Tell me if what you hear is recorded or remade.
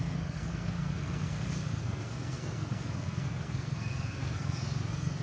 remade